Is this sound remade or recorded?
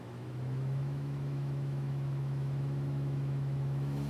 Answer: remade